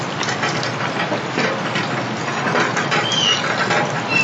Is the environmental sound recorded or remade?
recorded